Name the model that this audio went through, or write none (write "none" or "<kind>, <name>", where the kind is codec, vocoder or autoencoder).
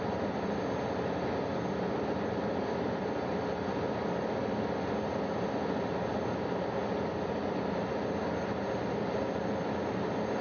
none